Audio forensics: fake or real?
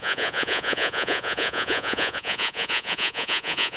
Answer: fake